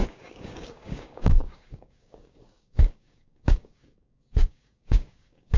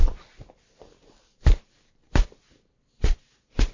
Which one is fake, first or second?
first